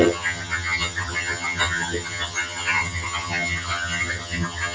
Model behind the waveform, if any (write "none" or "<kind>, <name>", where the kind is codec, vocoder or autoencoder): vocoder, HiFi-GAN